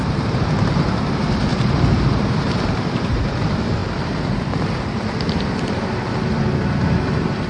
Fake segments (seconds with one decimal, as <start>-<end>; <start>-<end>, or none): 0.0-7.5